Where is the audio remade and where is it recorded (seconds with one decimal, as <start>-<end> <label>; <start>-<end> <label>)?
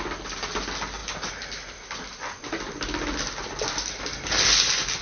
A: 0.0-5.0 recorded